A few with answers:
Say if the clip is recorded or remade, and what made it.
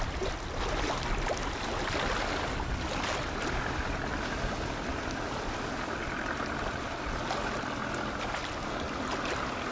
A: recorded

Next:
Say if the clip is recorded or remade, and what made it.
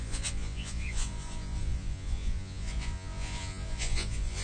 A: remade, vocoder, Vocos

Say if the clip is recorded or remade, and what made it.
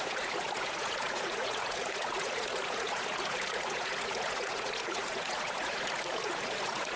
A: remade, vocoder, Vocos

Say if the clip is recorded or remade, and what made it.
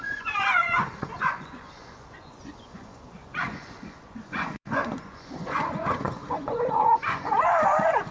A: remade, vocoder, Vocos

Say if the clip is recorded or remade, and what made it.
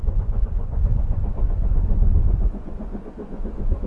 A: remade, vocoder, Vocos